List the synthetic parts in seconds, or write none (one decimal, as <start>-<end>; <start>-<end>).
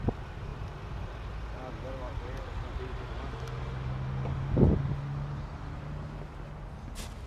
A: none